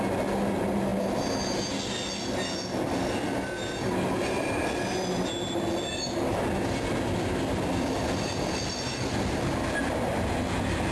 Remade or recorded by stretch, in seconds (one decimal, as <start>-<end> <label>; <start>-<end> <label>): 0.0-10.9 recorded